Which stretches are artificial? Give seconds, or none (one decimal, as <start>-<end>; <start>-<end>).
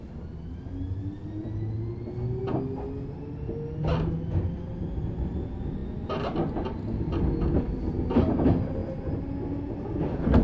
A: none